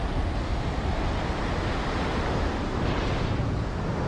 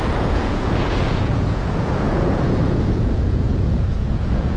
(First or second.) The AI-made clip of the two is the second